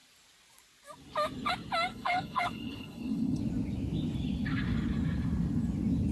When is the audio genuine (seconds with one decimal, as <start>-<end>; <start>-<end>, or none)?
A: 0.0-1.9; 3.4-6.1